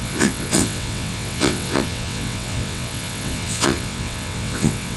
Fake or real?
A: fake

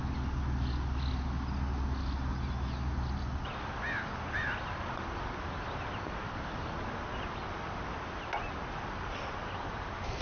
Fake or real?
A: real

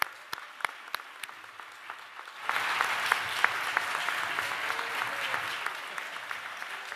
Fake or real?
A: real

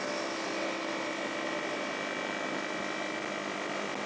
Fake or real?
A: real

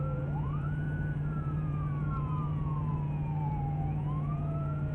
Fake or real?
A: fake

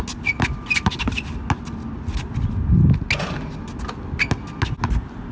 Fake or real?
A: real